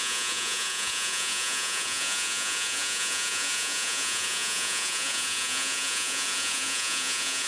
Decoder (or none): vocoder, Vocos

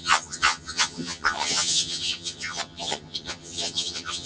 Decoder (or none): vocoder, HiFi-GAN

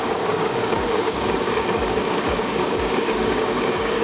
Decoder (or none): codec, DAC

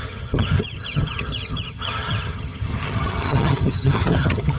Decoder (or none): vocoder, HiFi-GAN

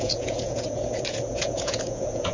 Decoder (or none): vocoder, Vocos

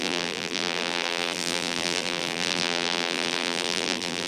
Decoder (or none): vocoder, BigVGAN v2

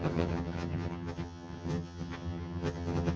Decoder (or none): vocoder, HiFi-GAN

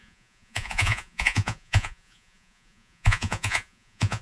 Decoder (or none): vocoder, Vocos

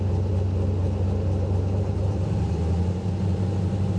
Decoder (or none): none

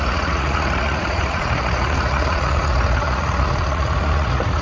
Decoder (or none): vocoder, Vocos